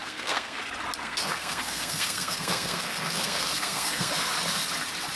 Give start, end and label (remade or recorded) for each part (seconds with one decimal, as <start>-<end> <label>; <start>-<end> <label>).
0.0-0.6 remade; 0.6-1.0 recorded; 1.0-4.1 remade; 4.1-5.2 recorded

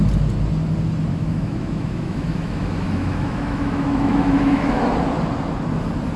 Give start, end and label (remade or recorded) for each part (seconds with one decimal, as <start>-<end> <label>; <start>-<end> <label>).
0.0-1.1 recorded; 1.1-4.8 remade; 4.8-6.2 recorded

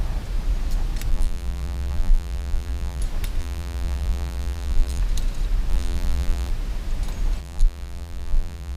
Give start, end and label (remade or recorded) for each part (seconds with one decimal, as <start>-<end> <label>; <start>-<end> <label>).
0.0-1.1 recorded; 1.1-3.0 remade; 3.0-3.4 recorded; 3.4-5.0 remade; 5.0-5.7 recorded; 5.7-6.5 remade; 6.5-7.4 recorded; 7.4-8.8 remade